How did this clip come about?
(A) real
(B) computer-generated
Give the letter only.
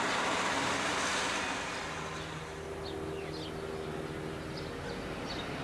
A